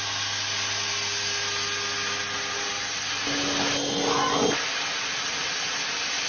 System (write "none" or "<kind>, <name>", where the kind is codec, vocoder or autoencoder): none